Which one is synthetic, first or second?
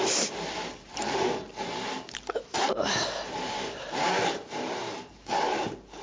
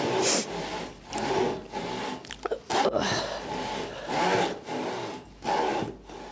first